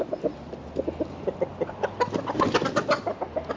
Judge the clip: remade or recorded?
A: recorded